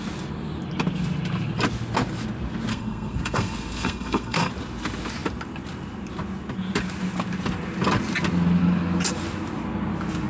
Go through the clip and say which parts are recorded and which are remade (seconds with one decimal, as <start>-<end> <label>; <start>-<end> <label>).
0.0-2.7 recorded; 2.7-4.5 remade; 4.5-10.3 recorded